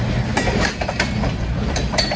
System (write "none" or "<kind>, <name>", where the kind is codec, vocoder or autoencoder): vocoder, BigVGAN v2